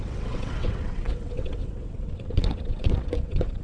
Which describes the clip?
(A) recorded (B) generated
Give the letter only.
B